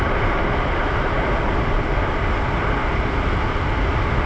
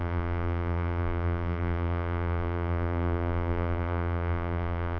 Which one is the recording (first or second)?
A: first